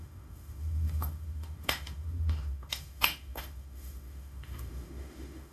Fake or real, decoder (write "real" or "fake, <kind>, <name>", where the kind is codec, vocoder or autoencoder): fake, autoencoder, DAC-VAE